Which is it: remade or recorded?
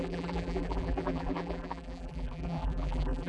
remade